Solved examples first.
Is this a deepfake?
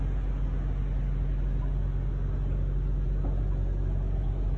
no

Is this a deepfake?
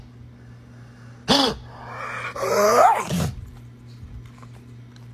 no